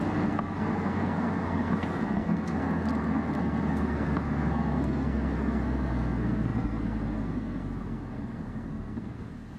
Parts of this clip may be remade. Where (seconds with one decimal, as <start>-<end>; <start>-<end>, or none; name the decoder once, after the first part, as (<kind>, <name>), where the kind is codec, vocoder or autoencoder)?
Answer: 0.0-9.6 (codec, SNAC)